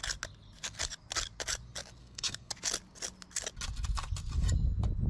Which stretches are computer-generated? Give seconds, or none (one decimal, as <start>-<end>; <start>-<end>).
2.0-2.5